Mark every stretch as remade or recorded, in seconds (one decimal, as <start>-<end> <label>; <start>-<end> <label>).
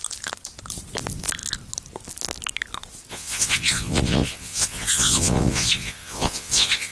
0.0-3.1 recorded; 3.1-6.9 remade